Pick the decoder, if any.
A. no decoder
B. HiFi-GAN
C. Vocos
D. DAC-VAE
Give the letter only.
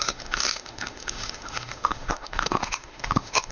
D